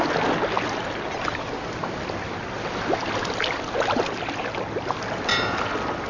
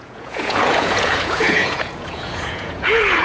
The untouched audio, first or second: first